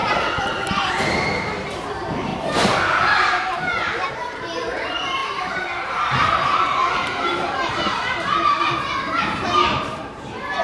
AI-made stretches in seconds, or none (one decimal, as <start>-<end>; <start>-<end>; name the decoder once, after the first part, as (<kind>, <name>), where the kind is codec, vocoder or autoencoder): 0.9-2.3 (vocoder, BigVGAN v2); 4.0-10.6

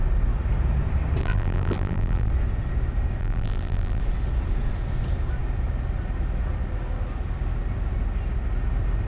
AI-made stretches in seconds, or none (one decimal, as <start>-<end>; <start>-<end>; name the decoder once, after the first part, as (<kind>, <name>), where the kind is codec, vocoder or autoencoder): 1.2-2.3 (vocoder, BigVGAN v2); 3.2-4.0